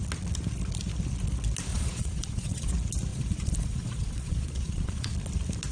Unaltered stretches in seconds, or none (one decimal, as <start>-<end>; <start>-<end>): 0.0-1.7; 2.7-3.1; 5.1-5.7